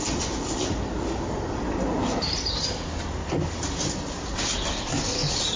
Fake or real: real